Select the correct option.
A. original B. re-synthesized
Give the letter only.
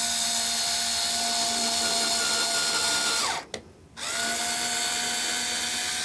A